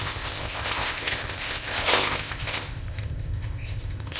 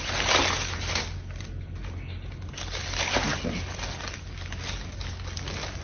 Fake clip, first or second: first